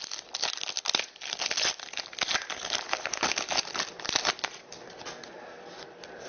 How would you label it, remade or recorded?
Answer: recorded